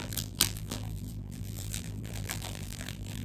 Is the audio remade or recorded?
remade